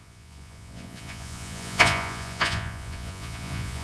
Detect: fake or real fake